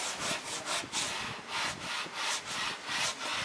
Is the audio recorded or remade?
recorded